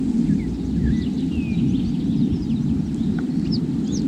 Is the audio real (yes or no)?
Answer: yes